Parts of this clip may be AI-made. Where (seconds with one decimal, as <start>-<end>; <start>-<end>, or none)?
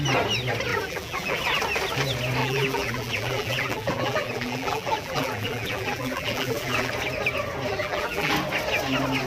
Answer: 0.7-1.4; 2.4-6.9; 7.7-8.3